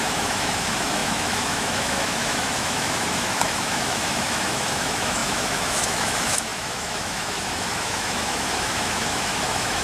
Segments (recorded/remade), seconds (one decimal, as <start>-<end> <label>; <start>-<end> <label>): 0.0-9.8 remade